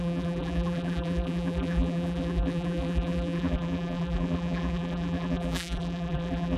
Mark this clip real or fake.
fake